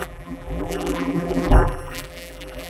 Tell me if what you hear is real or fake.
fake